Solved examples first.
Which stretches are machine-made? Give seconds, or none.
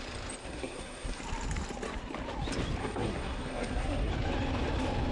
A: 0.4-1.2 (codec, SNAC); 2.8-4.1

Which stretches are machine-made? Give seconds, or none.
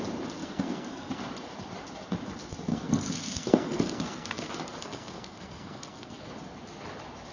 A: 0.4-1.2 (codec, SNAC); 2.7-6.3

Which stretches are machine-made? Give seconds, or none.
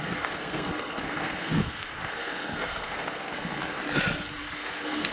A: 0.0-3.8 (codec, SNAC); 4.4-5.1